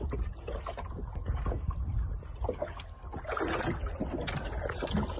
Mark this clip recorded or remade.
recorded